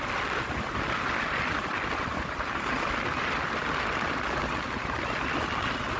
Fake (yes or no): no